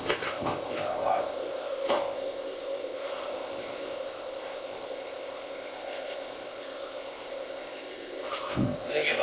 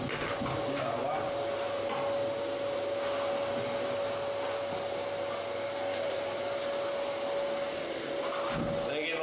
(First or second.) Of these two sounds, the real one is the second